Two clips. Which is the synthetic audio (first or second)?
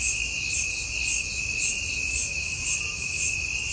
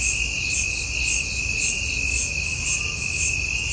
first